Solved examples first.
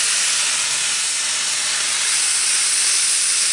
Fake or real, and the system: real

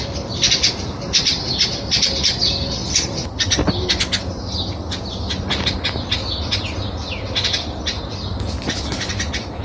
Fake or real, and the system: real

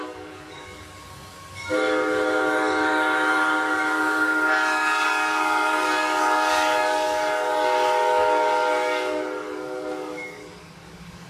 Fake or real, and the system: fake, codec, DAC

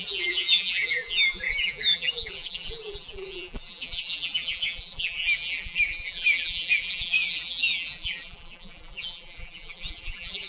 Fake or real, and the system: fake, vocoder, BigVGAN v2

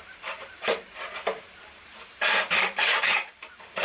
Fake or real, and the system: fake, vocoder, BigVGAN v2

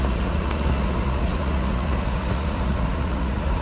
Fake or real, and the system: fake, vocoder, Vocos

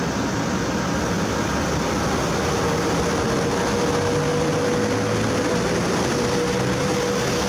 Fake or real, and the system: real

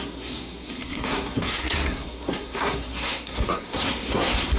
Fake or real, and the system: fake, codec, SNAC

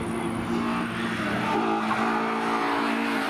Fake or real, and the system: real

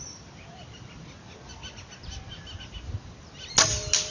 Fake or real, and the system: real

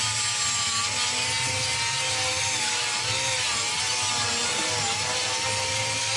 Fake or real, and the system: real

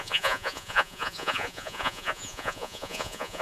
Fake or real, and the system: fake, vocoder, Vocos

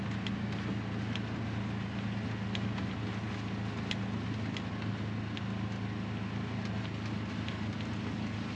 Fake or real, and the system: real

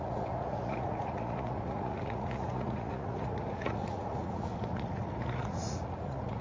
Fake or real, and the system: fake, vocoder, Vocos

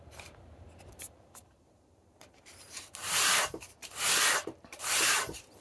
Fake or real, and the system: fake, vocoder, BigVGAN v2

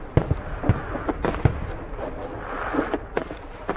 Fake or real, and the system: real